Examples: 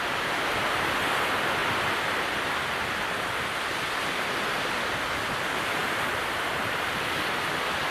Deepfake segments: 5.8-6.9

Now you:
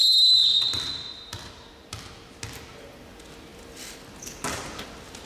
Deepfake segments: none

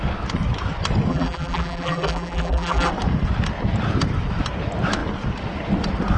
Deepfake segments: 1.1-2.9

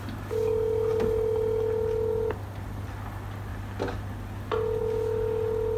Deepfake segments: none

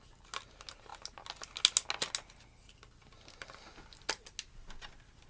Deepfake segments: none

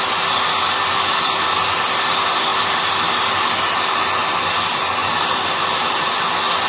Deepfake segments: 2.5-3.1; 5.0-6.3